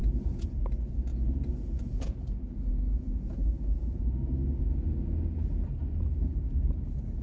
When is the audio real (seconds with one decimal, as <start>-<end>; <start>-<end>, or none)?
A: 0.5-1.1; 4.6-7.2